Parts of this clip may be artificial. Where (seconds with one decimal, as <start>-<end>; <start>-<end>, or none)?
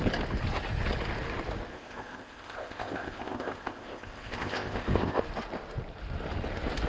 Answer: 1.7-5.2